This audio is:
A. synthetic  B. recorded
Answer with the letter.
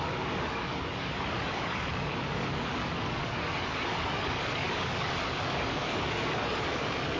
A